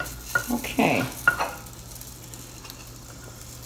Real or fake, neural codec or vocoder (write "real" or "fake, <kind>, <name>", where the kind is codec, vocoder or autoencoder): real